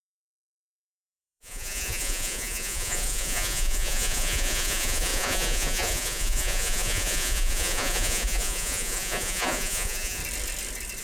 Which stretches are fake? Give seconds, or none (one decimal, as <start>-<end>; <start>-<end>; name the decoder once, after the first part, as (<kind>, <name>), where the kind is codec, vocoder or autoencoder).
0.0-10.2 (vocoder, Vocos)